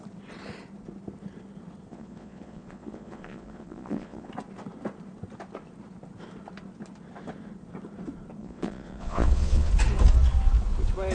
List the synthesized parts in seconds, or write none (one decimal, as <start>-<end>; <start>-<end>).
1.9-4.3; 8.4-9.7